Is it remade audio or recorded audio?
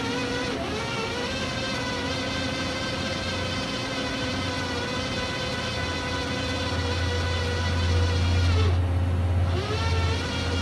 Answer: recorded